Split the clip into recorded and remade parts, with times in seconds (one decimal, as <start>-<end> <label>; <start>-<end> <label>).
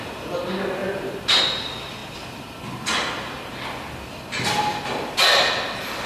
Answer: 0.0-0.8 recorded; 0.8-1.4 remade; 1.4-6.1 recorded